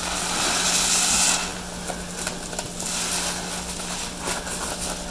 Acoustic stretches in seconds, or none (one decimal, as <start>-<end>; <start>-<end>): 0.0-5.1